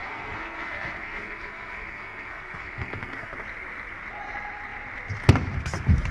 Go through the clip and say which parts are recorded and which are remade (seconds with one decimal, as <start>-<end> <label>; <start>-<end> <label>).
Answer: 0.0-3.3 remade; 3.3-6.1 recorded